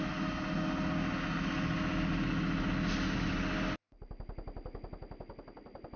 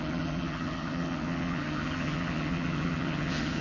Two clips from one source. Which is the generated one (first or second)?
second